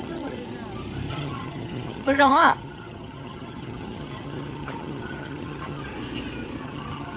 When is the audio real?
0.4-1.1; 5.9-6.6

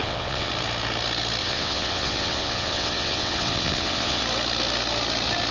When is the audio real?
0.5-1.4; 4.2-5.5

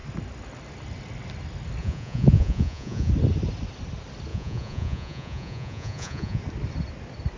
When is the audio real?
0.0-1.8; 3.1-4.3; 6.4-7.4

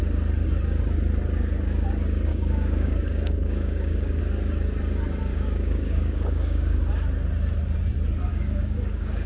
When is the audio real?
0.0-2.3; 4.2-5.3; 6.8-8.3

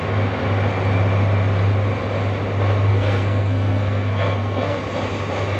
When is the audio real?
0.0-2.9; 4.8-5.6

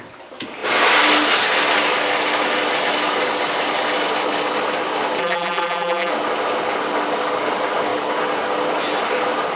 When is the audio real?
0.0-5.2; 6.1-9.6

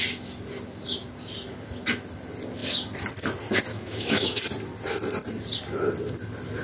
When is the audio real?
0.0-3.7; 4.4-6.6